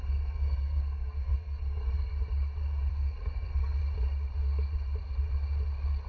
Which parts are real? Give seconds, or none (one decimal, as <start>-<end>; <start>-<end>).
2.1-2.9; 3.8-6.1